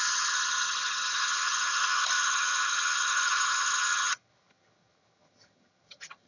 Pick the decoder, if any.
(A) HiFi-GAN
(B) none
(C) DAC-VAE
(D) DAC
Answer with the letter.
A